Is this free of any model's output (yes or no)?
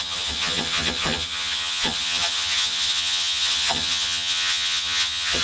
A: no